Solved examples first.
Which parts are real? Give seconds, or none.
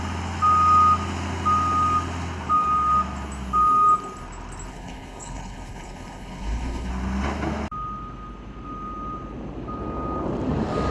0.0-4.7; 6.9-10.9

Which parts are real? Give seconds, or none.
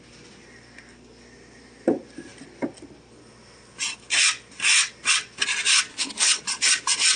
0.0-5.9; 6.4-7.2